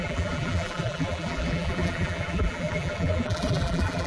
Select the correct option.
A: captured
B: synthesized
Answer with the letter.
B